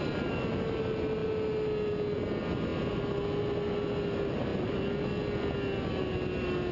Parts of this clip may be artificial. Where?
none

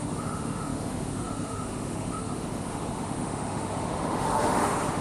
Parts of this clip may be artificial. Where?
0.0-5.0 (autoencoder, DAC-VAE)

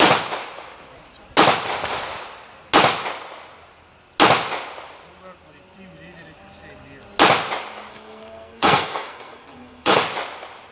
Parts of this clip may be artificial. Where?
7.9-10.0 (codec, SNAC)

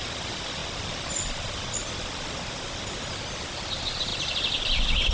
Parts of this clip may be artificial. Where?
none

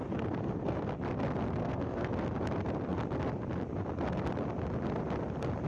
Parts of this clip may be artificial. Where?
0.0-0.8 (codec, SNAC); 1.6-2.1

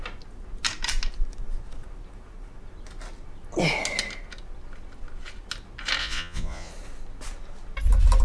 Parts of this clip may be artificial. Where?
6.0-6.7 (vocoder, Vocos)